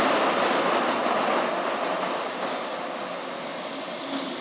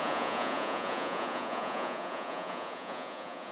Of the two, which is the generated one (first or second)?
second